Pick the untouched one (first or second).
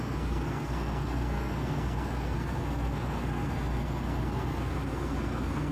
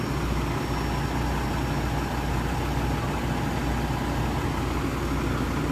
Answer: second